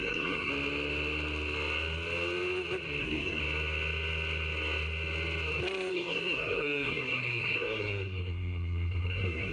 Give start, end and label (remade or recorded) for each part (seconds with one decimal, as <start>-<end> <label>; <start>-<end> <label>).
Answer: 0.0-0.5 remade; 0.5-3.0 recorded; 3.0-3.4 remade; 3.4-5.9 recorded; 5.9-9.5 remade